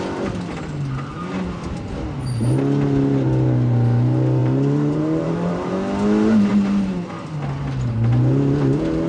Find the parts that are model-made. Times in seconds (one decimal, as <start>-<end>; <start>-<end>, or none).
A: 4.4-5.7